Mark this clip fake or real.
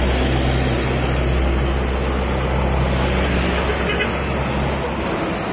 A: real